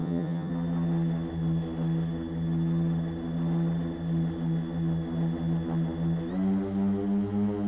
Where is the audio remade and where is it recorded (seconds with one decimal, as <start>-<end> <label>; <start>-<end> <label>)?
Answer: 0.0-0.5 remade; 0.5-7.7 recorded